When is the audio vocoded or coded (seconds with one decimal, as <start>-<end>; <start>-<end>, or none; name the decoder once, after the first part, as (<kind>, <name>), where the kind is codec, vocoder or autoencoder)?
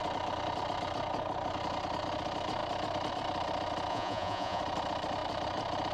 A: 3.9-4.6 (vocoder, Vocos)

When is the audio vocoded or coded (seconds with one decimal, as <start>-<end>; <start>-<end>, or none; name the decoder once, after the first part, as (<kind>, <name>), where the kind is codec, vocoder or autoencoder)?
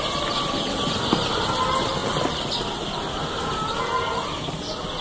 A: none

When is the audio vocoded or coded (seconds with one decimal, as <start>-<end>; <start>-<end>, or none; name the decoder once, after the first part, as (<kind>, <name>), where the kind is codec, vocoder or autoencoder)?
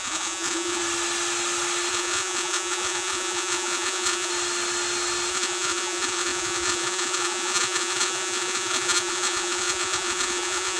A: 0.0-0.8 (vocoder, Vocos); 1.9-4.3; 5.3-10.8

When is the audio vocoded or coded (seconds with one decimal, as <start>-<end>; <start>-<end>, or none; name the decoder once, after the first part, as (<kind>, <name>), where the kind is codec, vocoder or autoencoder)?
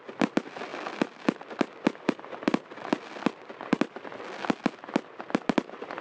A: none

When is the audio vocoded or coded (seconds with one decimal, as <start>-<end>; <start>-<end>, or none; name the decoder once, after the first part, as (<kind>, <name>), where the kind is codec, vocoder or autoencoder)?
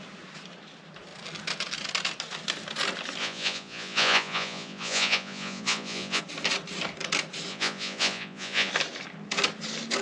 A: 3.2-6.2 (vocoder, Vocos); 7.5-8.7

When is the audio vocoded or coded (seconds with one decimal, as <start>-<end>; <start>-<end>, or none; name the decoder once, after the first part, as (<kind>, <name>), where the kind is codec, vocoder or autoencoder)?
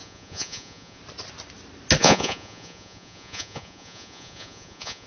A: 0.0-1.0 (vocoder, Vocos); 2.0-5.1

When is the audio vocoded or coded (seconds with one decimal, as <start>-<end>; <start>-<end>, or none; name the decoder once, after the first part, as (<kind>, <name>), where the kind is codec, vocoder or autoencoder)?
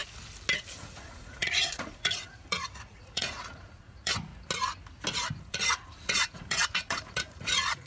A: 0.7-4.3 (vocoder, Vocos); 5.4-7.9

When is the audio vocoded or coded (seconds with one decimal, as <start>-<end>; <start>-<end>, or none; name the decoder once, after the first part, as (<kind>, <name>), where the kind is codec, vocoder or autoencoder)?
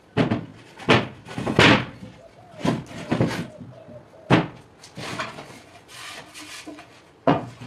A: 5.1-6.2 (vocoder, Vocos); 6.7-7.7